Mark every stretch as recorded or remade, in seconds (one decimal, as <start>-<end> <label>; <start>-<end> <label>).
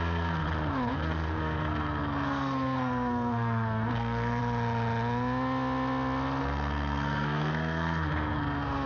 0.0-0.4 remade; 0.4-0.9 recorded; 0.9-4.4 remade; 4.4-6.4 recorded; 6.4-8.9 remade